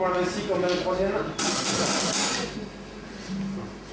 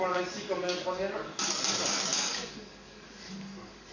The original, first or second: first